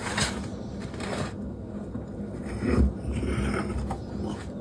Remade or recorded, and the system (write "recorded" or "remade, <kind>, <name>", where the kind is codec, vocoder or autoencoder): recorded